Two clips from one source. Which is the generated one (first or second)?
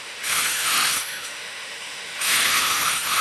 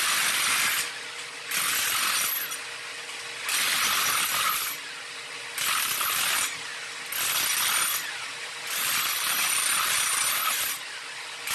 first